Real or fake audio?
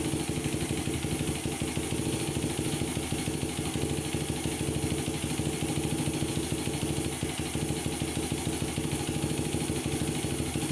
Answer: real